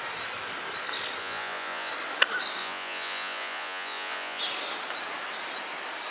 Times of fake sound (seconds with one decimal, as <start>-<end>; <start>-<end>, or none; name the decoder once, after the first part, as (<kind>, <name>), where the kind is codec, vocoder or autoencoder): 1.2-1.9 (vocoder, Vocos); 2.6-4.4